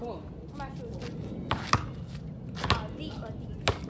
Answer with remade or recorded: recorded